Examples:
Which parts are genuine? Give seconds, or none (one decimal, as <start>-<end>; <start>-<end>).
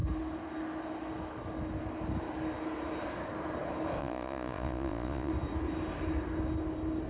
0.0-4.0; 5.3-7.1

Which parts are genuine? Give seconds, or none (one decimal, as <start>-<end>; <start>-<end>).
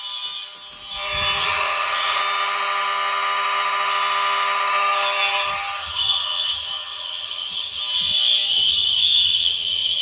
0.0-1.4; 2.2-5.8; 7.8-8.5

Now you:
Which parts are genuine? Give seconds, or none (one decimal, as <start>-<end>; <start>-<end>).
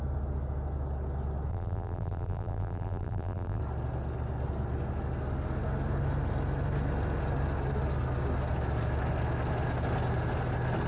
0.0-1.5; 3.6-10.9